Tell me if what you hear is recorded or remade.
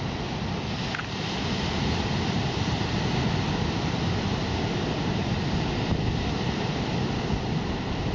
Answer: recorded